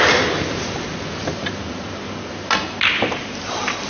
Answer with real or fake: real